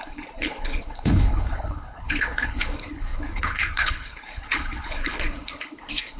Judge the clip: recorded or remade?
remade